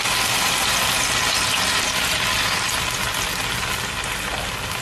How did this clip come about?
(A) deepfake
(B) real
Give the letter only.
B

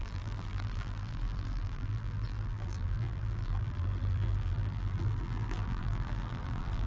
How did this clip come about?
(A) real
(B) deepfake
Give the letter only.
B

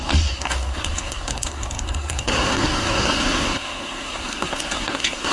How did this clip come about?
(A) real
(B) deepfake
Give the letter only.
B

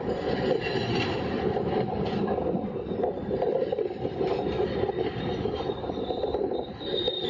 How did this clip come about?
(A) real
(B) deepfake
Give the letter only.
B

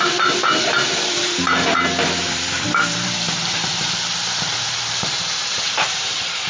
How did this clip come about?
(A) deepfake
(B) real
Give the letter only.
A